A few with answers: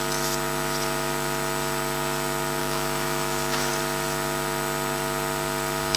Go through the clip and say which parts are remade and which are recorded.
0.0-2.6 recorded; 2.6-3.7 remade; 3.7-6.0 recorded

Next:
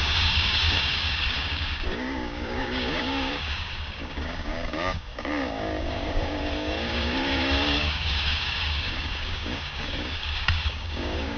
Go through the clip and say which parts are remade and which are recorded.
0.0-11.4 remade

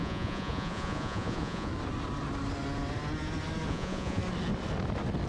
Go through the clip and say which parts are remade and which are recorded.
0.0-1.7 remade; 1.7-3.7 recorded; 3.7-4.2 remade; 4.2-5.3 recorded